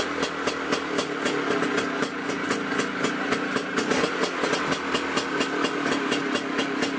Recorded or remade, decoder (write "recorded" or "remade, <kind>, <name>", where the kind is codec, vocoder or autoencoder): recorded